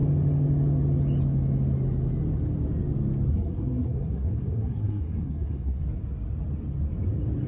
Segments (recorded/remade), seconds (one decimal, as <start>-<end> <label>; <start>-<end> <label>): 0.0-3.3 recorded; 3.3-5.8 remade; 5.8-7.5 recorded